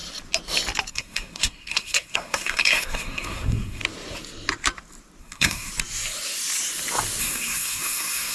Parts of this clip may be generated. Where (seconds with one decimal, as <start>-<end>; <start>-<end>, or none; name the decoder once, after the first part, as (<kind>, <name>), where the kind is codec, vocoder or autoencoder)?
0.9-3.8 (codec, SNAC); 5.2-5.7; 7.2-8.3